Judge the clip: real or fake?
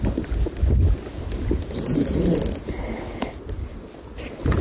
real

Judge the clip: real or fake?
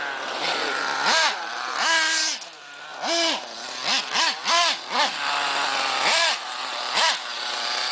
real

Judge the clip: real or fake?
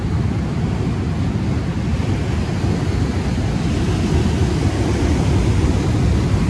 real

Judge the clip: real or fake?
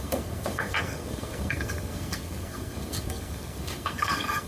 fake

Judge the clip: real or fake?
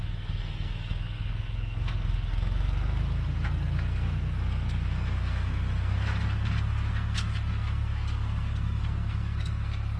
fake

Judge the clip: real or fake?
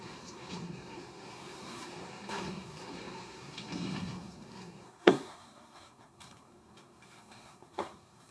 fake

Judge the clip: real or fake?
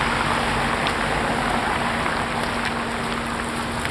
real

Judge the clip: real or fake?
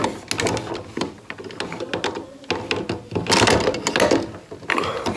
real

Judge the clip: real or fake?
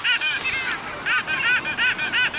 real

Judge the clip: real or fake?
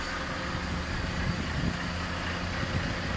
real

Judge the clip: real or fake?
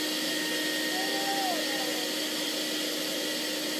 real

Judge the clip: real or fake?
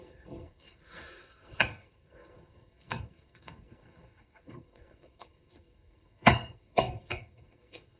fake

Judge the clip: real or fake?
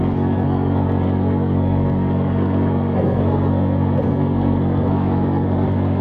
fake